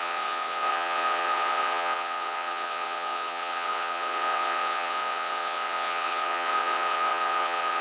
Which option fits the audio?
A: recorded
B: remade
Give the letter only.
B